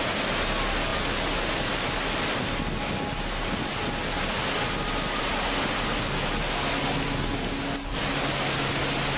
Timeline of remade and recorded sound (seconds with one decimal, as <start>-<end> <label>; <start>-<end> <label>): 0.0-9.2 recorded